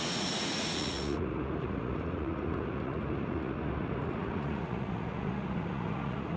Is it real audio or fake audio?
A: fake